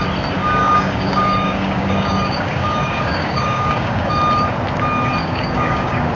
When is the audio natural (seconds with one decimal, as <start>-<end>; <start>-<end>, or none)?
0.0-0.4; 4.1-5.2